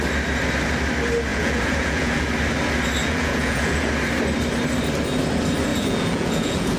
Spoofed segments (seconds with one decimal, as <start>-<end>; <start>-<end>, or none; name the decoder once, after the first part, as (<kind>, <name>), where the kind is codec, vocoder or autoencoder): 1.3-2.3 (vocoder, Vocos); 3.0-3.9; 5.7-6.8